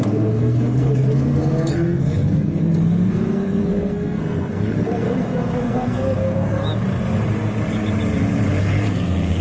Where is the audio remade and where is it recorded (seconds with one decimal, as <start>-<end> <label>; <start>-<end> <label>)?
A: 0.0-6.6 remade; 6.6-8.6 recorded; 8.6-9.4 remade